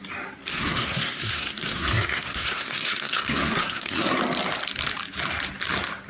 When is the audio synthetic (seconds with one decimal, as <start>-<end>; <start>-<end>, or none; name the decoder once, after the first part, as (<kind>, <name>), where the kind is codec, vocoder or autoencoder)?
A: 0.5-4.2 (codec, SNAC)